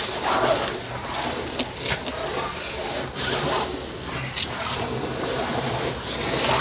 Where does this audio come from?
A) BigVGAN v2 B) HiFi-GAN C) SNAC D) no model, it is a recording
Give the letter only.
D